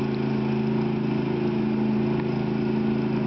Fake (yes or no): no